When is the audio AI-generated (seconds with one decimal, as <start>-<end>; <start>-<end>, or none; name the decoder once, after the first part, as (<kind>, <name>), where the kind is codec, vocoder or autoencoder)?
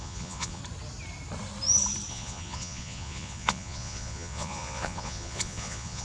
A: 0.0-0.6 (vocoder, Vocos); 2.1-6.0